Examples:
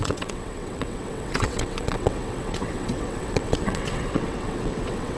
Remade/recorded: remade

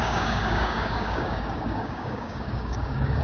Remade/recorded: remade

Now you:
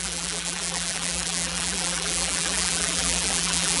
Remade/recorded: remade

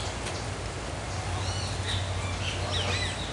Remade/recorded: recorded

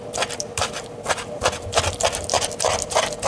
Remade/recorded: recorded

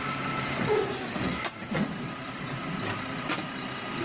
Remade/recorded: remade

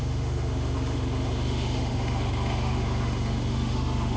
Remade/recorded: remade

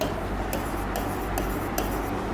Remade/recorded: recorded